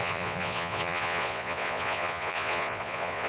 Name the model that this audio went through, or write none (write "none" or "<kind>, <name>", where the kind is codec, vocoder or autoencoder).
vocoder, Vocos